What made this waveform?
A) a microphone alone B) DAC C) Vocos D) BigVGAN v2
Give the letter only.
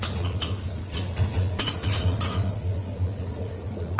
C